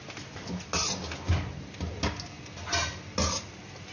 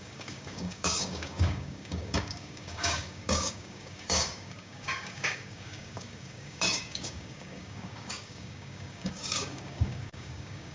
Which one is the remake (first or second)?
second